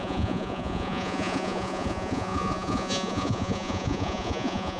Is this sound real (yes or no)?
no